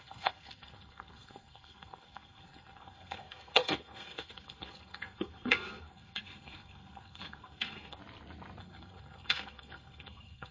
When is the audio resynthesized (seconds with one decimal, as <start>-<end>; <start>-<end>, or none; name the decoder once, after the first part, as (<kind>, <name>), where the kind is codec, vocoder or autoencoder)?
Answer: 0.0-8.0 (codec, SNAC); 8.6-10.5